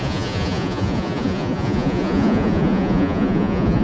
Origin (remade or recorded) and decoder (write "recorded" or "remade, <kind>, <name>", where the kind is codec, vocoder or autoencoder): remade, vocoder, Vocos